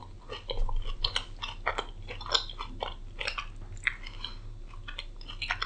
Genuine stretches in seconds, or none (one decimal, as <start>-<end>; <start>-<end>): 0.0-5.7

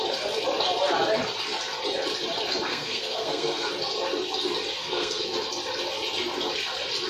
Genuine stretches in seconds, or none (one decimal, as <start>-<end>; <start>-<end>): 0.0-2.7; 3.7-4.8; 5.5-7.1

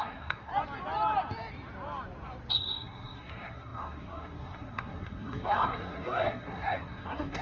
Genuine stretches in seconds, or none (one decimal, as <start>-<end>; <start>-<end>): 0.5-2.5

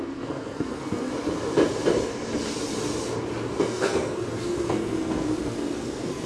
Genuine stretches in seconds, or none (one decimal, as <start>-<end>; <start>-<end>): 1.1-3.6